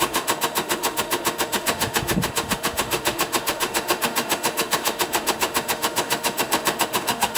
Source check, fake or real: fake